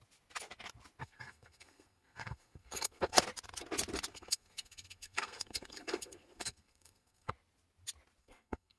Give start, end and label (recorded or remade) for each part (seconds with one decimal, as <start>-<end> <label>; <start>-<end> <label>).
0.0-1.0 recorded; 1.0-3.2 remade; 3.2-4.1 recorded; 4.1-7.3 remade; 7.3-8.2 recorded; 8.2-8.8 remade